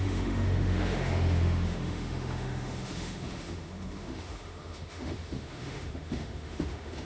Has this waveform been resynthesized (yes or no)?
yes